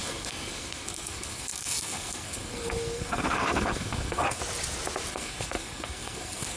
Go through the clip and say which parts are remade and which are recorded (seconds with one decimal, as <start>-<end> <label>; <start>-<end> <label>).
0.0-4.4 remade; 4.4-5.1 recorded; 5.1-6.6 remade